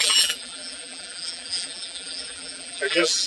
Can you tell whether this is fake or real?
fake